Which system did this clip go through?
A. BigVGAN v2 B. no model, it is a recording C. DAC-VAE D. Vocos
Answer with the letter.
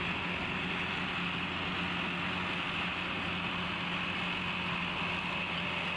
B